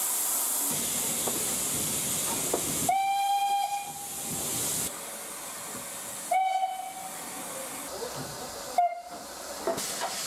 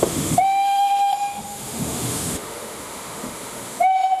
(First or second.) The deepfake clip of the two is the second